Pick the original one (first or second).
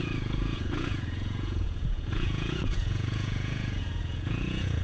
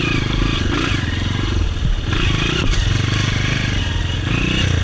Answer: second